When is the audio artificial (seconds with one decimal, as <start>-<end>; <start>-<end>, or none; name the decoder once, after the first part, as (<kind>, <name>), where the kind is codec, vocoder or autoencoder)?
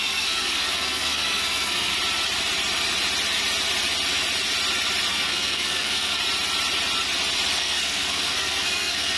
0.0-1.9 (codec, SNAC); 5.1-6.2; 7.6-9.2